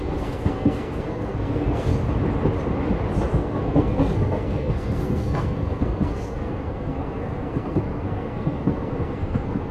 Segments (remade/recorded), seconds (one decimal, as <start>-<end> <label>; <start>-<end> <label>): 0.0-1.9 remade; 1.9-3.3 recorded; 3.3-9.7 remade